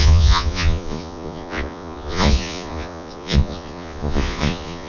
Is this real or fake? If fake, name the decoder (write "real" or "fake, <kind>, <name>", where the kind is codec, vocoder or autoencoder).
fake, vocoder, Vocos